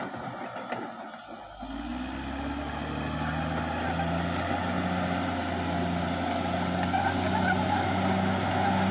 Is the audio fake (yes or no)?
no